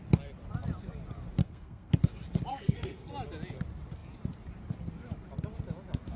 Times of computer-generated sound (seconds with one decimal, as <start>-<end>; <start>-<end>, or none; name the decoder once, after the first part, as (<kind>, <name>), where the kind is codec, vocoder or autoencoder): 1.4-1.9 (codec, SNAC); 2.5-3.1